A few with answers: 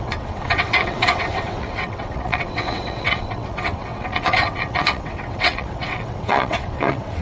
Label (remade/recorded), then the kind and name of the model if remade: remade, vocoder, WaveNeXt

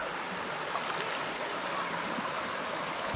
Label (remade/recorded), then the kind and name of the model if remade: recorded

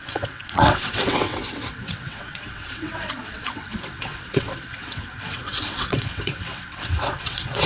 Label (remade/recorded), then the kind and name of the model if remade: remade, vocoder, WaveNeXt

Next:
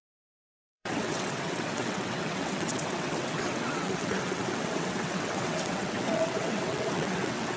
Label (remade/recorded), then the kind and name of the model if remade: remade, vocoder, WaveNeXt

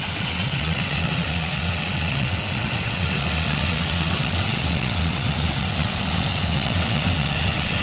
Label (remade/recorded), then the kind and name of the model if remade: remade, vocoder, WaveNeXt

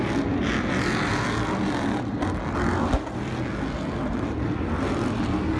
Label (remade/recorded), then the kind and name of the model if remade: recorded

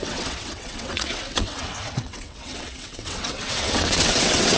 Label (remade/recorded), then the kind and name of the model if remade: remade, vocoder, WaveNeXt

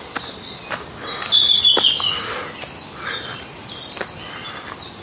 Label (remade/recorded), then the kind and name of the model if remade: recorded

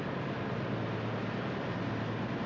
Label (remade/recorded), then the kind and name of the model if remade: recorded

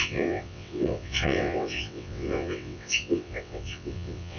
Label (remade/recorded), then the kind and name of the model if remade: remade, vocoder, WaveNeXt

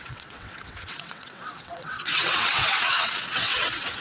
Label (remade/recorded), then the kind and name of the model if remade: remade, vocoder, WaveNeXt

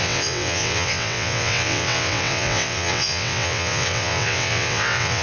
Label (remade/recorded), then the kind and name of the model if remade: remade, vocoder, WaveNeXt